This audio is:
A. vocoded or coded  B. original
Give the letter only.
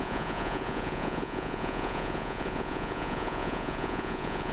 A